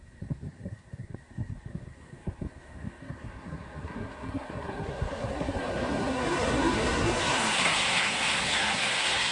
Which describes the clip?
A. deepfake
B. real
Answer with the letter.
A